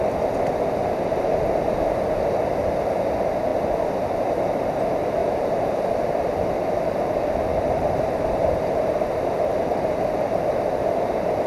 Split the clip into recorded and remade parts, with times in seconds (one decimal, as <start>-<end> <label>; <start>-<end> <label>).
0.0-0.8 recorded; 0.8-1.5 remade; 1.5-5.2 recorded; 5.2-5.9 remade; 5.9-7.5 recorded; 7.5-10.4 remade; 10.4-11.5 recorded